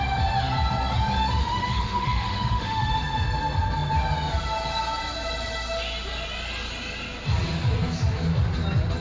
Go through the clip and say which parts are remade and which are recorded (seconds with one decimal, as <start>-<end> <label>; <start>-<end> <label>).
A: 0.0-1.4 recorded; 1.4-2.9 remade; 2.9-9.0 recorded